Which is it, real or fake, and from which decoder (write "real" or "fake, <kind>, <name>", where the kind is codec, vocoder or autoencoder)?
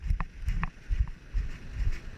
real